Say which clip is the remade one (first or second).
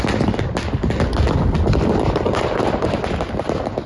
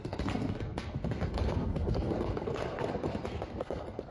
second